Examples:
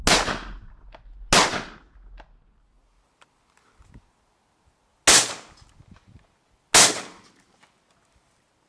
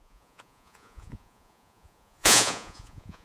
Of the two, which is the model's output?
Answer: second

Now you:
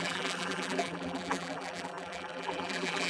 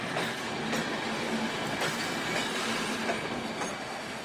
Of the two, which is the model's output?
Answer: first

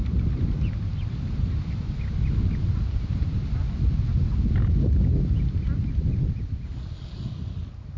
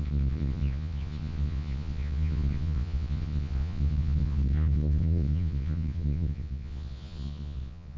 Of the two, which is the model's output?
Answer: second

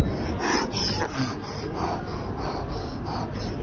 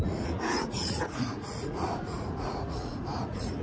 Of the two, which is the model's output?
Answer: second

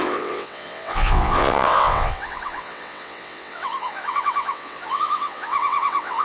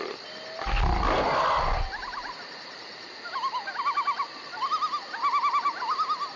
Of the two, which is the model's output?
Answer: first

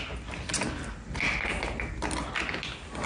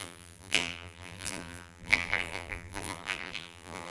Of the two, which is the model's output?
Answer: second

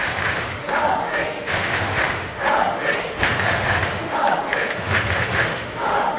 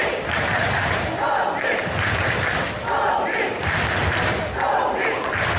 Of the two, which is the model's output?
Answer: first